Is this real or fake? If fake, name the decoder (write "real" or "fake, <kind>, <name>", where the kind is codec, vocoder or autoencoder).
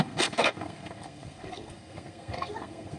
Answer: fake, codec, SNAC